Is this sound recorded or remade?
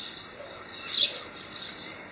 remade